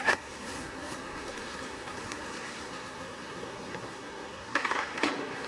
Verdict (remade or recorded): remade